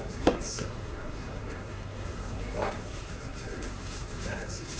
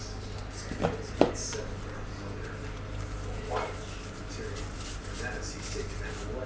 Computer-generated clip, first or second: first